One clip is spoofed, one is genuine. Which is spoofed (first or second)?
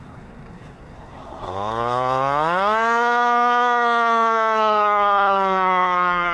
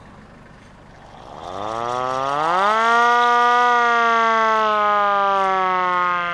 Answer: first